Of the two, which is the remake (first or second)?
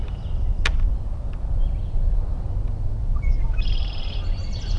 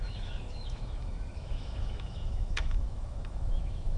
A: second